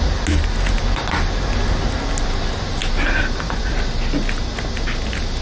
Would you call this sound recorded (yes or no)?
yes